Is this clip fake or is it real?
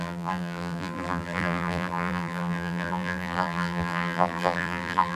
fake